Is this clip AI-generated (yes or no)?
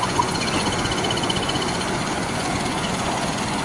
yes